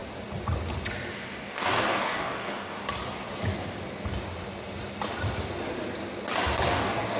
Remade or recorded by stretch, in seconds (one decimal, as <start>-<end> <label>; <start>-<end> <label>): 0.0-1.1 recorded; 1.1-2.8 remade; 2.8-6.7 recorded; 6.7-7.2 remade